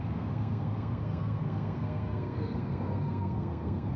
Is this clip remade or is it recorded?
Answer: remade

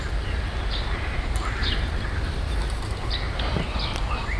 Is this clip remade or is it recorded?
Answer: recorded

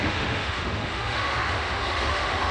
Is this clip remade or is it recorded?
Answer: remade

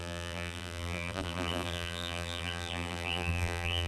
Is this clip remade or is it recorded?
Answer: remade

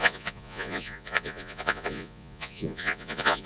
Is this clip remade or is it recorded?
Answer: remade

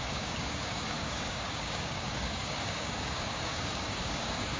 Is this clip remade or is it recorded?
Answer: remade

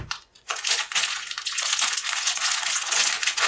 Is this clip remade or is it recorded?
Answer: remade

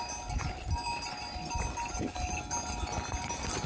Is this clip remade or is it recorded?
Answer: recorded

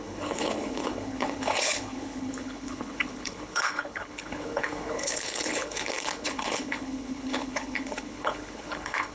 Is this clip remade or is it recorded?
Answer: remade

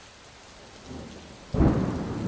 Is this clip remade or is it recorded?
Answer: recorded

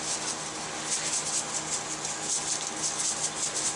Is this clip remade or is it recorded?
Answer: recorded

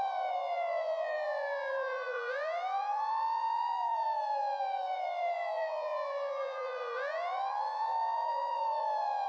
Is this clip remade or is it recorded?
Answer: remade